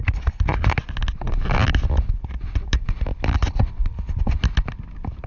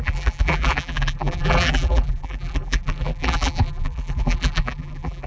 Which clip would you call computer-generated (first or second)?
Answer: second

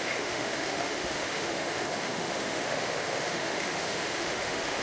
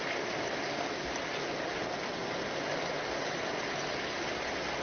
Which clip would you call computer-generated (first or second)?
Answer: first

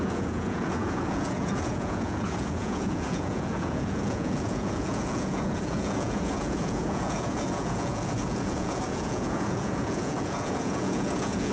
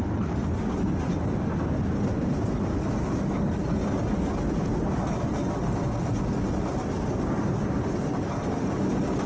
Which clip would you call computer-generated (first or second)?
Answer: first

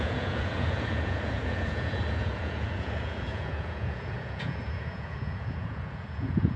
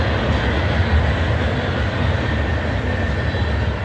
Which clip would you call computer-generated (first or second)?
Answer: first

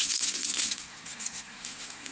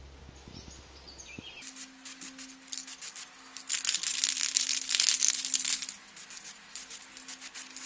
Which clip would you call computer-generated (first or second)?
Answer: first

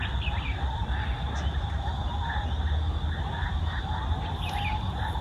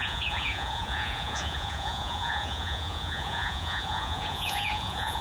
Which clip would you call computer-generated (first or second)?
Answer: second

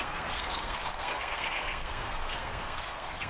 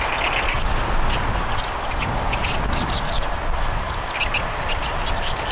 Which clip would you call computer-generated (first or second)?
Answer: first